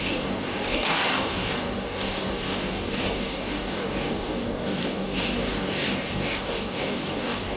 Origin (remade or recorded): remade